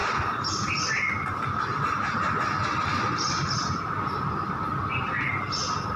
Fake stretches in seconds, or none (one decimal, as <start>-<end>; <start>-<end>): 0.0-0.7